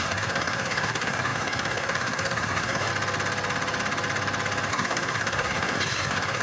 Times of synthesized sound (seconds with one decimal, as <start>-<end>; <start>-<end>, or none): 0.0-2.9; 4.7-6.4